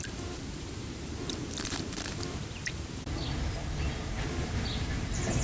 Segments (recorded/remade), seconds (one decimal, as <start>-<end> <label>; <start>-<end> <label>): 0.0-3.2 remade; 3.2-4.3 recorded; 4.3-5.4 remade